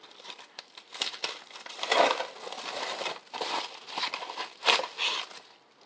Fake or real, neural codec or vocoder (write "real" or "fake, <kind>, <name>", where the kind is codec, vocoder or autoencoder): real